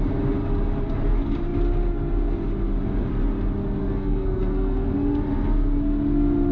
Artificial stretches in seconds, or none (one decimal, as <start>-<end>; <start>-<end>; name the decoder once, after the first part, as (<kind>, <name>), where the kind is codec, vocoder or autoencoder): 3.8-4.9 (codec, SNAC)